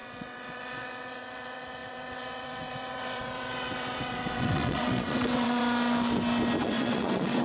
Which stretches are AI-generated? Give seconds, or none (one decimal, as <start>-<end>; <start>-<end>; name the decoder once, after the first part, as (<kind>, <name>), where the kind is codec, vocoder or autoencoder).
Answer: 0.0-5.6 (vocoder, WaveNeXt); 6.6-7.4